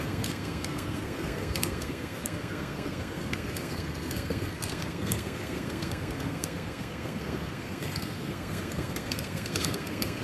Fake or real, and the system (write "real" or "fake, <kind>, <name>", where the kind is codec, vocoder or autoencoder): fake, codec, SNAC